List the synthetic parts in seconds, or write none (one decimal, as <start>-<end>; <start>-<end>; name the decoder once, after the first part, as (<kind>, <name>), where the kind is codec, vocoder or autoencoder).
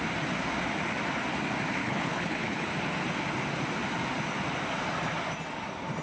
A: 1.8-2.7 (codec, HILCodec)